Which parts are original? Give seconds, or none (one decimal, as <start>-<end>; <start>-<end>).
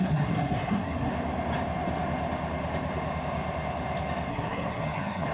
1.1-4.3